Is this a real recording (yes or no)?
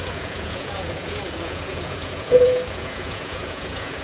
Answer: no